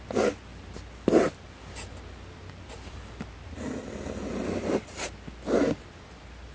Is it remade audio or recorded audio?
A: recorded